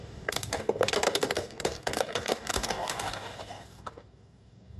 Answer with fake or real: fake